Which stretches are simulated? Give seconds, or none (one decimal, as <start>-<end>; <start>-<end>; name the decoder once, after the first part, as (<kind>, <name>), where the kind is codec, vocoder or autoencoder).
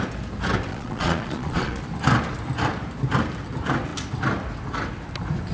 0.7-1.8 (vocoder, Vocos)